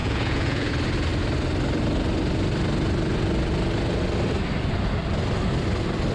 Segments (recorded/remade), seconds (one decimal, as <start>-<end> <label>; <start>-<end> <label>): 0.0-0.7 remade; 0.7-6.1 recorded